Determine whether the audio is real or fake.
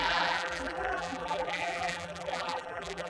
fake